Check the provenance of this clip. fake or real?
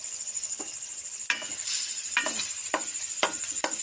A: real